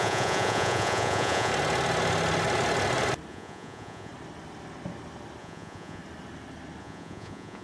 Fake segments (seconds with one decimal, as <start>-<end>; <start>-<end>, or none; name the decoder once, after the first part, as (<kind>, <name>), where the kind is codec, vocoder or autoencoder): 0.0-1.5 (vocoder, Vocos); 3.3-4.1; 5.4-6.0; 6.8-7.6

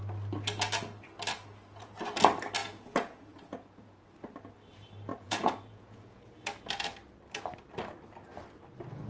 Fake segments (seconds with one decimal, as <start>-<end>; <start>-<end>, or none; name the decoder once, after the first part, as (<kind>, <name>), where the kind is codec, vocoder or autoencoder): 2.6-4.1 (vocoder, Vocos); 5.1-6.3